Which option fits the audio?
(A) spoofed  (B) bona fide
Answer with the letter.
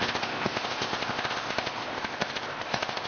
A